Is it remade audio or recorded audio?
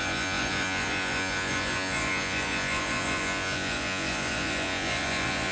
remade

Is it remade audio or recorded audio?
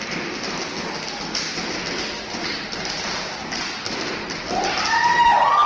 recorded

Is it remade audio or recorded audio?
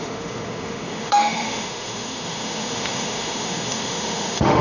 remade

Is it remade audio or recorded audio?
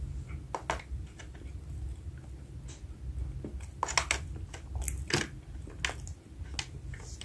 recorded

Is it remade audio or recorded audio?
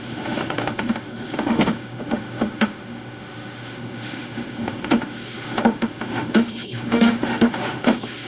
remade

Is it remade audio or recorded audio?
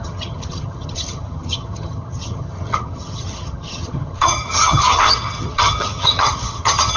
remade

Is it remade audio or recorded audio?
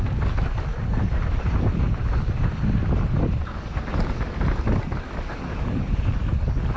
recorded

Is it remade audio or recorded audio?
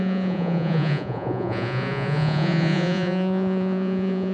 remade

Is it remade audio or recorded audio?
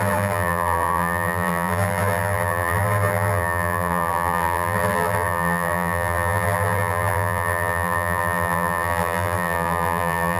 remade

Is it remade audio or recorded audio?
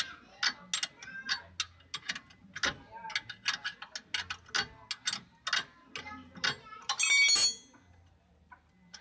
recorded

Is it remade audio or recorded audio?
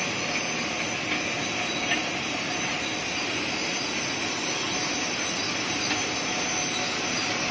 recorded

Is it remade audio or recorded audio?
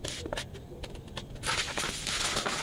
recorded